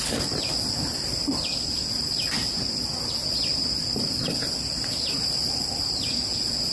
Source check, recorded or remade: recorded